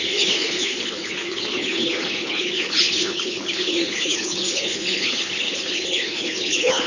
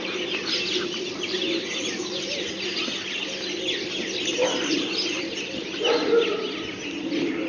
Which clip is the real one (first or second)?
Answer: second